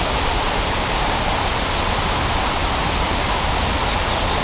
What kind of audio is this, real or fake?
real